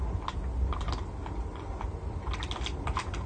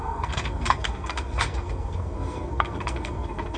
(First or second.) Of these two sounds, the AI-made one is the second